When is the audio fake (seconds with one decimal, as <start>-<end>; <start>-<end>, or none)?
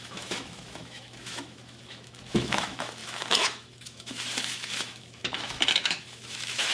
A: 0.0-6.7